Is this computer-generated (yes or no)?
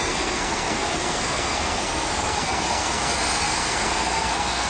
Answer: yes